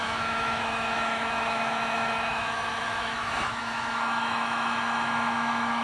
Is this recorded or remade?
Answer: remade